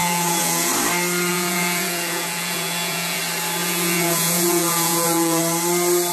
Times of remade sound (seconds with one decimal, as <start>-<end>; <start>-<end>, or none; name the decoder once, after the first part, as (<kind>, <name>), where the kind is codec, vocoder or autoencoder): 0.0-0.7 (vocoder, Vocos); 1.3-3.2; 3.6-5.4